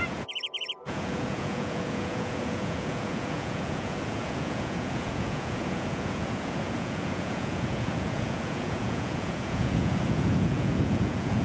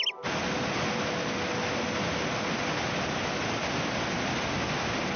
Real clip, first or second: second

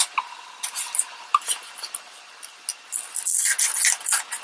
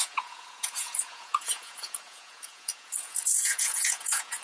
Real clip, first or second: first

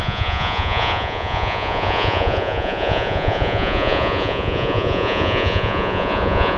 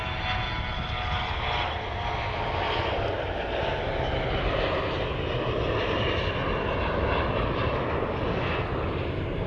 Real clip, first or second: second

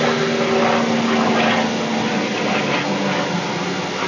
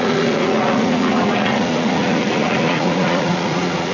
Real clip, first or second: first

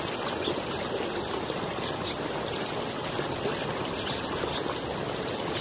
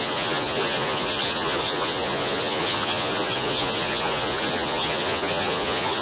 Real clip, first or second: first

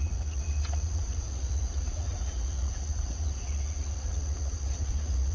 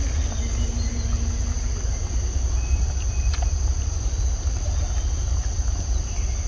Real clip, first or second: second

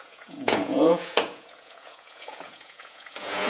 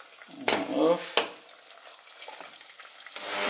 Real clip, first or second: second